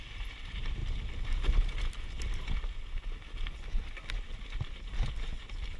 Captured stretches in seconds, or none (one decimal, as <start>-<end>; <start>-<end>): 0.0-5.8